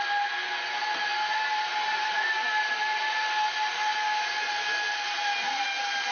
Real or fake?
real